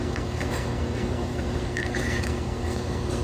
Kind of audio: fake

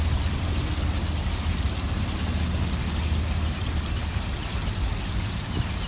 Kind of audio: real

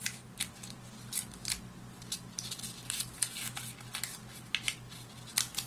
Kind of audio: real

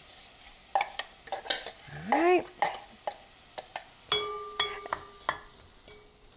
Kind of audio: real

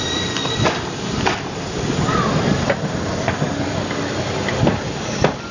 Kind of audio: real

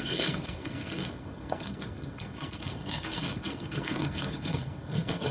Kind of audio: fake